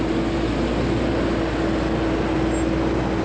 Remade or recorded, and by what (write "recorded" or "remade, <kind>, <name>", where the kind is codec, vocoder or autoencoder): recorded